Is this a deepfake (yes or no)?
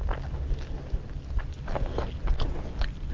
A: no